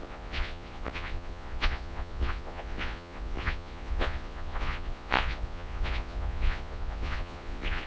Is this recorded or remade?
remade